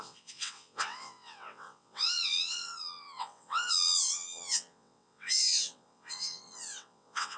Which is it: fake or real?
fake